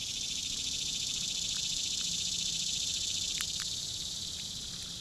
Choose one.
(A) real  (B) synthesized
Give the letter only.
B